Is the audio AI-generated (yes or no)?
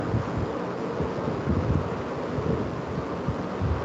no